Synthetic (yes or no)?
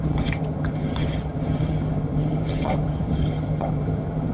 yes